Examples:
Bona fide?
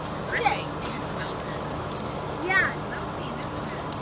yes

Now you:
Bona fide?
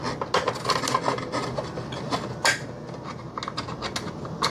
yes